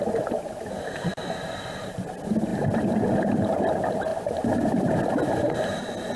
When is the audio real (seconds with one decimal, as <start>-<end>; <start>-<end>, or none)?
0.0-6.2